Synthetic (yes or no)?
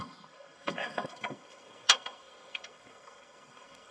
yes